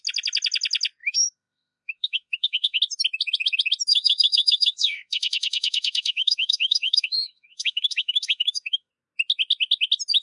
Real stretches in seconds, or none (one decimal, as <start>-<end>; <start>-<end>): 0.0-1.0; 2.8-3.9; 8.9-10.2